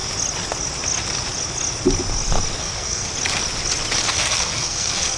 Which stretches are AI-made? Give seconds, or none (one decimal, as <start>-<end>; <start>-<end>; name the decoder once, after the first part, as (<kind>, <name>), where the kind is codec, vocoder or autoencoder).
2.6-3.1 (codec, SNAC); 4.1-5.2